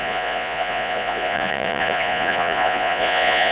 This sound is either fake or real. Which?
fake